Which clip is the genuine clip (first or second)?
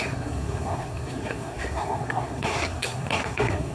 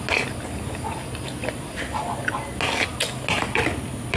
second